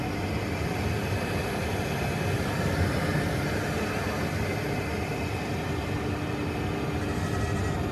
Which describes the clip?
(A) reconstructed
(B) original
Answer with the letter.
B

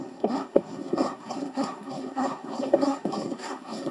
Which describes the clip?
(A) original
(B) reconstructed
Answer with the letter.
B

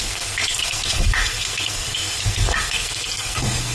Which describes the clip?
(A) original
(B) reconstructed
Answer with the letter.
B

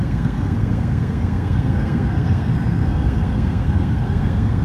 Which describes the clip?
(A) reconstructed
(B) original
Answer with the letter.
A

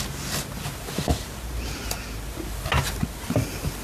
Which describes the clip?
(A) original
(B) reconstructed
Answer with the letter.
A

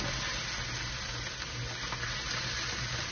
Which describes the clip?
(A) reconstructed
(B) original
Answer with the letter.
B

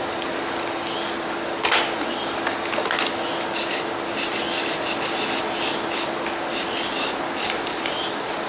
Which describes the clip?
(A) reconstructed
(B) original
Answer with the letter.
B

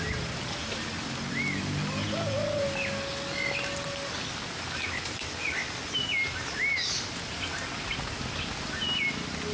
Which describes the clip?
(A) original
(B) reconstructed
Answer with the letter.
A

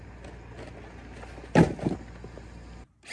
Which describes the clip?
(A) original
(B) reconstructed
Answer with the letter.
A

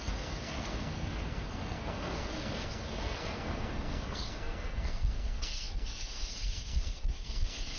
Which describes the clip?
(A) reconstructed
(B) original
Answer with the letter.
A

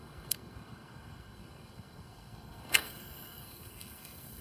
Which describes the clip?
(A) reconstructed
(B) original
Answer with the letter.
A